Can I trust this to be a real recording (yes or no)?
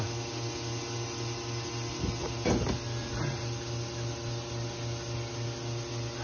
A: yes